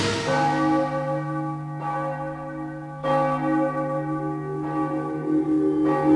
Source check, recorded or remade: recorded